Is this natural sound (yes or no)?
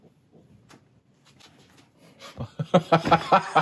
yes